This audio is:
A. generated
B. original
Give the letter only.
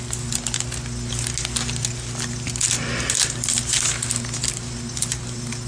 B